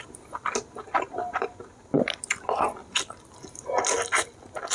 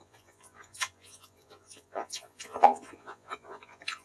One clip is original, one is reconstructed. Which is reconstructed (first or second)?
second